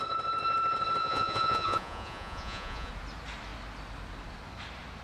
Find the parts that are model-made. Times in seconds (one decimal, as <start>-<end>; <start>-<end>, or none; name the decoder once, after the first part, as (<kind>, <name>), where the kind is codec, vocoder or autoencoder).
1.0-2.9 (vocoder, Vocos)

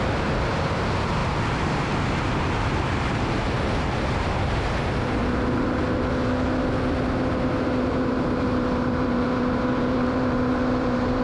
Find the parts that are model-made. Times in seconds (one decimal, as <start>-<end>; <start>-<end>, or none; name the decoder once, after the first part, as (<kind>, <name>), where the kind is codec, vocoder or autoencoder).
0.0-5.2 (vocoder, BigVGAN v2); 7.9-11.2

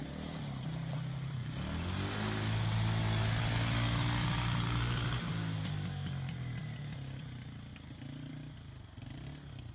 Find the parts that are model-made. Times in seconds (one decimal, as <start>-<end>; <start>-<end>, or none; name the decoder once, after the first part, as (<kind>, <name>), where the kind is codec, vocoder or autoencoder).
none

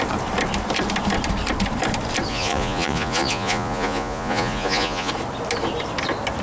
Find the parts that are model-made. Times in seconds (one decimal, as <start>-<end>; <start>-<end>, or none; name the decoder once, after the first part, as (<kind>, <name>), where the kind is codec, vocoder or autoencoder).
2.3-5.1 (vocoder, Vocos)

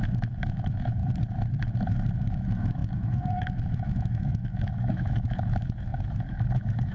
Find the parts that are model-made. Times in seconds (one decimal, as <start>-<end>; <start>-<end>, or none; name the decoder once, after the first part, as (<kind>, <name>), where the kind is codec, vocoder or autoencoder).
0.0-1.0 (autoencoder, DAC-VAE); 2.1-6.9